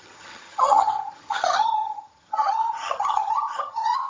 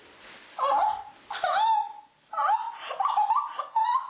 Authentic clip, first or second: second